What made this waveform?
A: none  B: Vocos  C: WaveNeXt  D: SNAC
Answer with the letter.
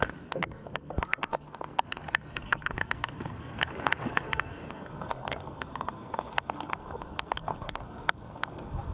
D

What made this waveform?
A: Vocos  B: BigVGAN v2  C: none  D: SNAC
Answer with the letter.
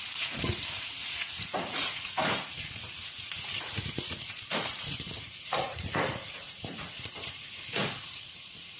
A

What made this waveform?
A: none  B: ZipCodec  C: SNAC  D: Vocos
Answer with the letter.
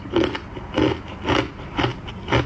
A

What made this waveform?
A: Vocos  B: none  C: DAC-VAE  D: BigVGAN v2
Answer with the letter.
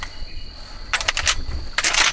B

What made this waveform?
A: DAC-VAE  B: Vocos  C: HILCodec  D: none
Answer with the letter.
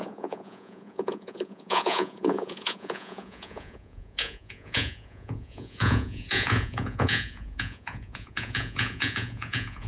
B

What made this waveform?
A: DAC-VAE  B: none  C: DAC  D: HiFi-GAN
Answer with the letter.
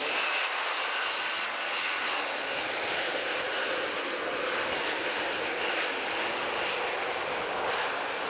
B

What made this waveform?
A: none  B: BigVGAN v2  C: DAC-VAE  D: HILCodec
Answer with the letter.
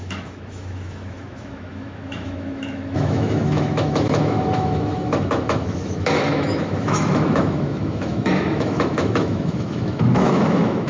C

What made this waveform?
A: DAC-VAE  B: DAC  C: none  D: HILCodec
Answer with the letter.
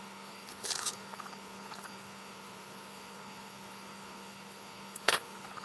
D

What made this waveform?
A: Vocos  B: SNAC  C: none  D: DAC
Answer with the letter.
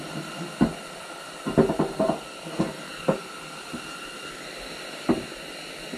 C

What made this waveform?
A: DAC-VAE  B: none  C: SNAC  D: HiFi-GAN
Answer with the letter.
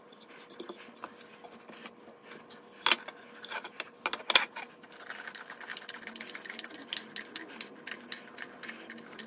B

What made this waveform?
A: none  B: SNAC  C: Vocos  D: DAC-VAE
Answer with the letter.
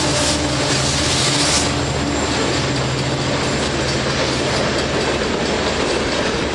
A